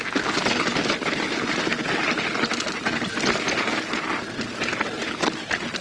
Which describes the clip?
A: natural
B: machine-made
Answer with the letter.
A